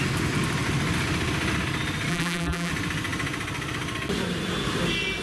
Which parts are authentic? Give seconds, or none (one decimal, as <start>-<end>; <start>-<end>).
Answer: 0.0-2.1; 2.7-5.2

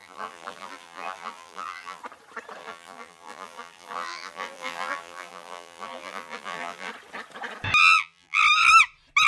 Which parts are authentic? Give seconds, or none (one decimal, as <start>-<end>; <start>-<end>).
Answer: 2.0-2.6; 6.9-7.8; 8.4-9.3

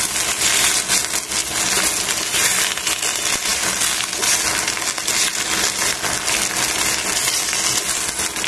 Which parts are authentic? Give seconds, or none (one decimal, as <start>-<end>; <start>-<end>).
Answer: 0.0-8.5

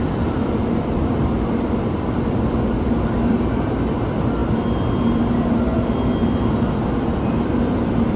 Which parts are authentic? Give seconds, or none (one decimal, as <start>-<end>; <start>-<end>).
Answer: none